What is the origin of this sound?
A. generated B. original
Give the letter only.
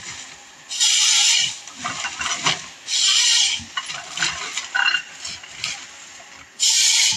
B